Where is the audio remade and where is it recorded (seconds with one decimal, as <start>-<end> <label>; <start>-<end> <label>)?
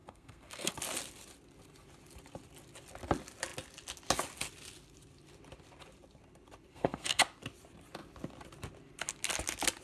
0.0-0.7 remade; 0.7-6.7 recorded; 6.7-7.2 remade; 7.2-9.8 recorded